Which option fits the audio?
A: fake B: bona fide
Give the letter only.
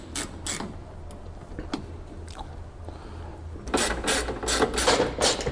B